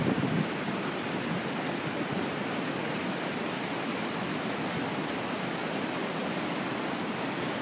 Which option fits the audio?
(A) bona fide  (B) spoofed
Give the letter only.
B